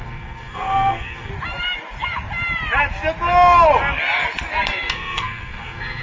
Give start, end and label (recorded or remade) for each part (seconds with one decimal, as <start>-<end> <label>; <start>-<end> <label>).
0.0-1.3 remade; 1.3-4.9 recorded; 4.9-6.0 remade